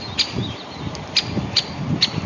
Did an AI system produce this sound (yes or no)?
no